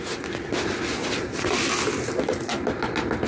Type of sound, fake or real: real